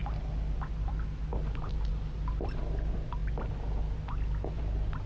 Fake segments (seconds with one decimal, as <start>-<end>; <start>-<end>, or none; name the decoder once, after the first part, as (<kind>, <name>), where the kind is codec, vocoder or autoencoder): none